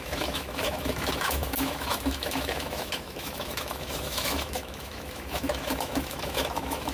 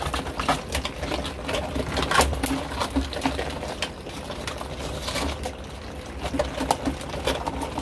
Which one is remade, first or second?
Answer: first